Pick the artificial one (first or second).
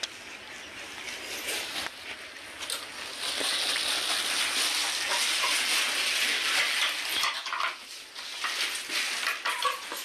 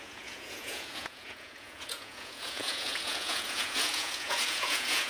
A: second